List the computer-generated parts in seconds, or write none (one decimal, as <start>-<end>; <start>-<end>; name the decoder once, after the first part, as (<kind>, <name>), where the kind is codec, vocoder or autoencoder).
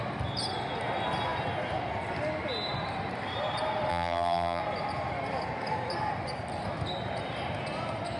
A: 3.9-4.6 (vocoder, BigVGAN v2)